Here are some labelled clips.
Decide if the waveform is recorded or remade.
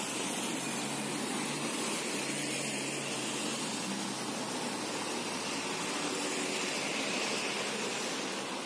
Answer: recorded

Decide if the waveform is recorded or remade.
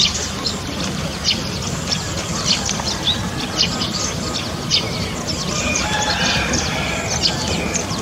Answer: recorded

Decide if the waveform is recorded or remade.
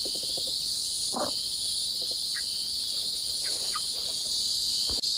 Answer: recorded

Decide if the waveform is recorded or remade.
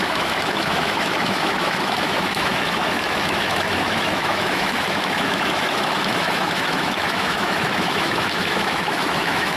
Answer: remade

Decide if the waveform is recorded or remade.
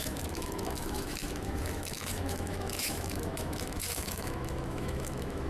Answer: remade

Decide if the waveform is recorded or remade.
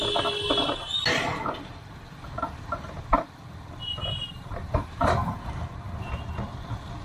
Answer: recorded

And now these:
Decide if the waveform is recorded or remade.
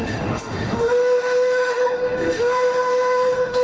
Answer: remade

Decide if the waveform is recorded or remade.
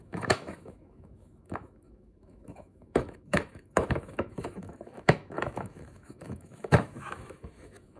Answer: remade